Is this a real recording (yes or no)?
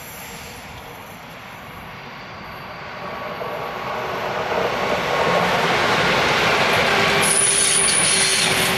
yes